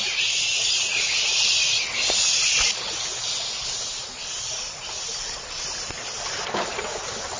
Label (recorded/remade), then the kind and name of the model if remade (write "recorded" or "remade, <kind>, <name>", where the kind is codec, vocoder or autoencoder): recorded